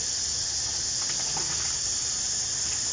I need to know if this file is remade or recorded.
recorded